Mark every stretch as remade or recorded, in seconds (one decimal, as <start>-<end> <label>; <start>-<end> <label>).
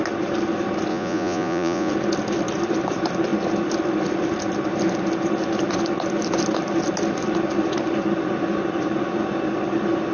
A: 0.0-0.9 recorded; 0.9-1.9 remade; 1.9-10.1 recorded